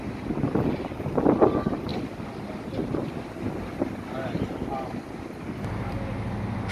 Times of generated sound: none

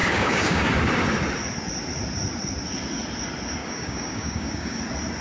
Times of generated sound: 0.0-0.7 (codec, DAC); 3.6-4.8